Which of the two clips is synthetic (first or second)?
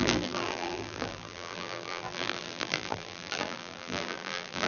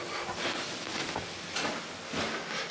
first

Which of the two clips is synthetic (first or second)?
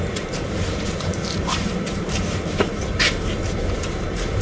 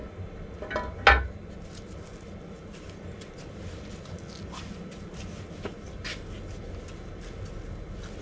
first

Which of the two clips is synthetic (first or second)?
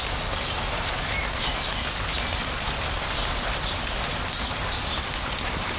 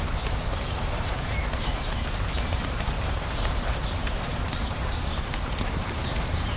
second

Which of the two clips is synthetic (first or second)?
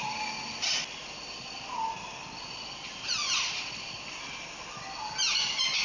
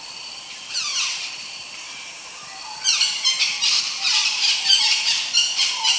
second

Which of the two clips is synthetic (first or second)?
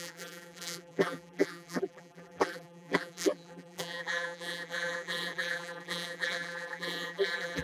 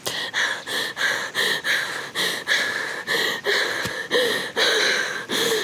first